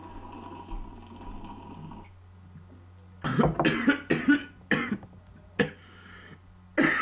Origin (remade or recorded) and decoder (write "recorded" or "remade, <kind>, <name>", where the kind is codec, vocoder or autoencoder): recorded